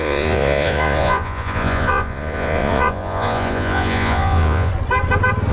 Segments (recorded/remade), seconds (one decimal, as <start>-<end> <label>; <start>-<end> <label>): 0.0-4.7 remade; 4.7-5.5 recorded

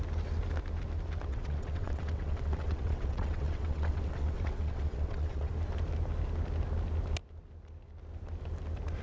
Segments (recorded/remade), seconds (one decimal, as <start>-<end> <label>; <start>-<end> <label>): 0.0-1.3 recorded; 1.3-5.5 remade; 5.5-9.0 recorded

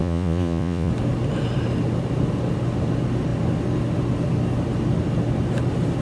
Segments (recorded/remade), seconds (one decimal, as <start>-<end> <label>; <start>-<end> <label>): 0.0-0.9 remade; 0.9-6.0 recorded

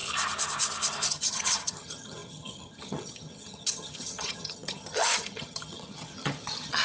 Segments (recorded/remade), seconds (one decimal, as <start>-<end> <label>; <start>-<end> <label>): 0.0-1.1 recorded; 1.1-6.8 remade

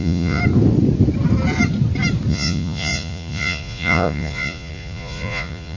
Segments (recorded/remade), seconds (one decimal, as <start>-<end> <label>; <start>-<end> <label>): 0.0-0.4 remade; 0.4-2.3 recorded; 2.3-5.8 remade

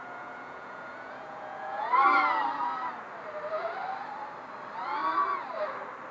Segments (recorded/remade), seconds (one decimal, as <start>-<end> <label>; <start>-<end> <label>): 0.0-1.9 remade; 1.9-6.1 recorded